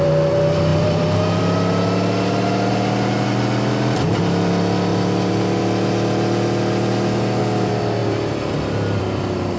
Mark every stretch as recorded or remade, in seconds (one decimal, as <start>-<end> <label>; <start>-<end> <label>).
0.0-9.6 recorded